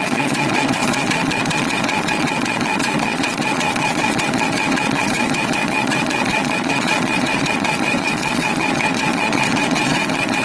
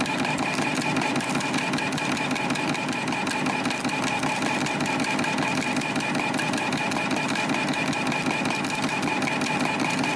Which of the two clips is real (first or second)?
second